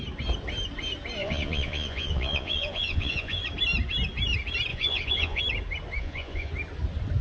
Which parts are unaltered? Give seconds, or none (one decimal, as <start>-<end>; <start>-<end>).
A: 0.0-1.2; 3.4-4.7; 5.4-6.0; 6.5-7.2